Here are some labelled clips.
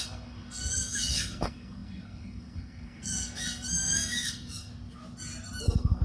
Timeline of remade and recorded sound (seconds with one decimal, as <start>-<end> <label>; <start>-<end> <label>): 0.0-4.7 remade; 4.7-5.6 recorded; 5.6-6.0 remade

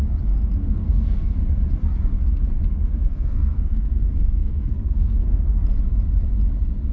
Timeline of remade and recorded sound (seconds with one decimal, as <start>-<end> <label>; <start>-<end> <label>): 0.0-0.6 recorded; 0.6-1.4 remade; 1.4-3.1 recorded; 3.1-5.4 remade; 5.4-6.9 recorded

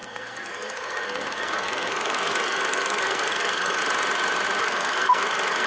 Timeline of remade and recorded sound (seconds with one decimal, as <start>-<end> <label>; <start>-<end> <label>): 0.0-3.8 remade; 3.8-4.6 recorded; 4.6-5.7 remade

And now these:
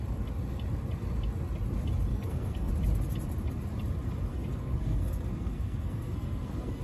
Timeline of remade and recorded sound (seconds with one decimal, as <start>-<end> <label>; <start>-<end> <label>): 0.0-2.1 recorded; 2.1-2.7 remade; 2.7-4.3 recorded; 4.3-6.8 remade

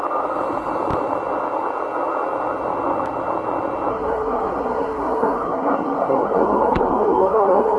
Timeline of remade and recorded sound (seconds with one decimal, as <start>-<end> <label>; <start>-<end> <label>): 0.0-3.9 recorded; 3.9-7.8 remade